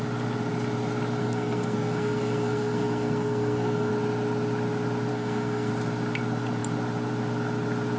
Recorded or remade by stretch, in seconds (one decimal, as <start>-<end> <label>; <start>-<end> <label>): 0.0-1.2 recorded; 1.2-3.9 remade; 3.9-5.1 recorded; 5.1-5.7 remade; 5.7-8.0 recorded